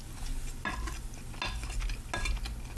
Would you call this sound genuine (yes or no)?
yes